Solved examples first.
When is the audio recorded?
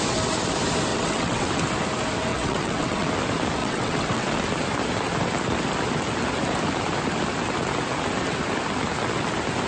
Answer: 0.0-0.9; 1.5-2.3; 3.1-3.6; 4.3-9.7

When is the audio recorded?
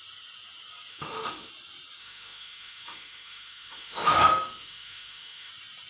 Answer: 0.0-0.9; 1.5-2.0; 5.5-5.9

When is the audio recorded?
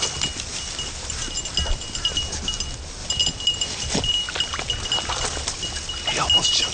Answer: 0.0-3.0; 4.1-6.7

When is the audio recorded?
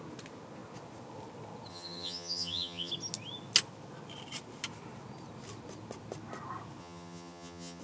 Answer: 0.0-1.7; 2.9-6.8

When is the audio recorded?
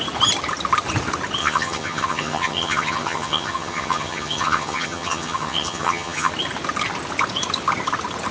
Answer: 0.0-1.4; 6.3-8.3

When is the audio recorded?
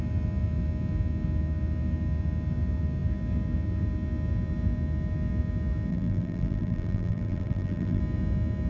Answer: 0.0-5.9; 8.0-8.7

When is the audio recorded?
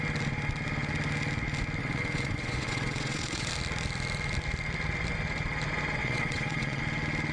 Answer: 0.0-1.8; 3.5-6.0; 6.8-7.3